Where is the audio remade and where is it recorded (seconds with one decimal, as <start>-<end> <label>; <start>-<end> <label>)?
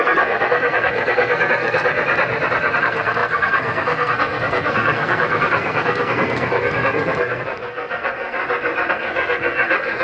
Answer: 0.0-1.8 remade; 1.8-2.8 recorded; 2.8-8.4 remade; 8.4-8.9 recorded; 8.9-10.0 remade